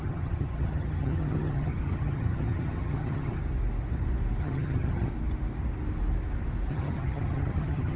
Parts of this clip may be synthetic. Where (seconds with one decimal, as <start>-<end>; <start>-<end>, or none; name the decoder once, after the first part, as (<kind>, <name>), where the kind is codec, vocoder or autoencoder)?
0.0-3.4 (vocoder, HiFi-GAN); 4.4-5.1; 6.7-8.0